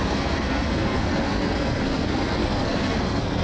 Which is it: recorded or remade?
remade